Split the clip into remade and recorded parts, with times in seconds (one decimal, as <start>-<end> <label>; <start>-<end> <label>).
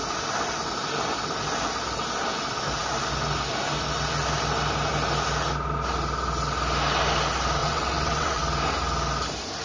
0.0-7.6 recorded; 7.6-8.4 remade; 8.4-9.6 recorded